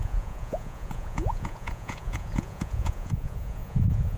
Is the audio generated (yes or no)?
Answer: yes